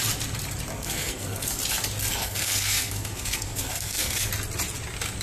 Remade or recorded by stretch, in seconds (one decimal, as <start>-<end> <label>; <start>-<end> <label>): 0.0-0.7 recorded; 0.7-1.6 remade; 1.6-2.1 recorded; 2.1-4.3 remade; 4.3-5.2 recorded